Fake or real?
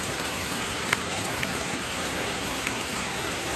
fake